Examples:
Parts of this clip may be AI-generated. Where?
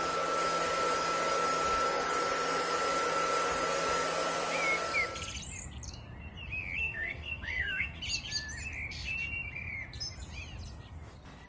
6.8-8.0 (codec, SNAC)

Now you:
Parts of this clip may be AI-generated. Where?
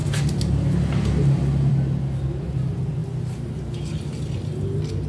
none